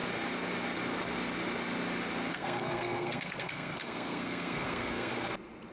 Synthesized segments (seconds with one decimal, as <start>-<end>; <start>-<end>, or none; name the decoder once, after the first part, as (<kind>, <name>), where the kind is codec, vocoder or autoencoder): 2.3-5.3 (codec, SNAC)